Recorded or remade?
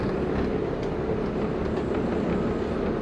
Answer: recorded